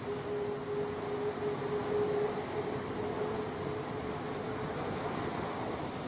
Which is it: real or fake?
real